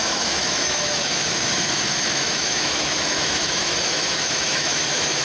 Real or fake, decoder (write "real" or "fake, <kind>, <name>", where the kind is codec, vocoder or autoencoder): fake, autoencoder, DAC-VAE